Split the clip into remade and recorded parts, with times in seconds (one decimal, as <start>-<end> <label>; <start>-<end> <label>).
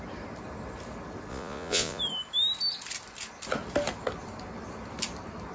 0.0-1.3 recorded; 1.3-2.0 remade; 2.0-5.5 recorded